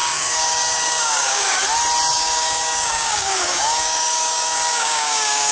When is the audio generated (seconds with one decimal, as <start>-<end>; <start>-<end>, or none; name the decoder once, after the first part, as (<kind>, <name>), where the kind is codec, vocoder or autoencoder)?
0.0-1.6 (codec, DAC); 2.1-5.5